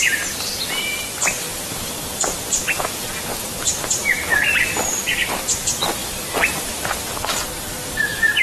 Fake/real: fake